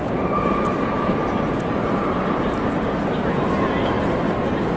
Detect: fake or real real